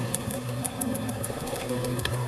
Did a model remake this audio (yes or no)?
yes